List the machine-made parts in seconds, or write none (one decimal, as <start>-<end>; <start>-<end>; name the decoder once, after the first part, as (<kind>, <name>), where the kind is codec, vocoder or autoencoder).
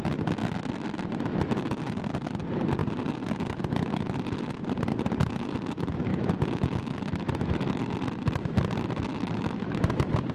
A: 6.1-7.8 (autoencoder, DAC-VAE); 9.1-9.8